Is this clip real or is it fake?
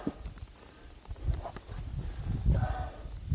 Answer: real